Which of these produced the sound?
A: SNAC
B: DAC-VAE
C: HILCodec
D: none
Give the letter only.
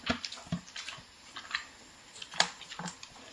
D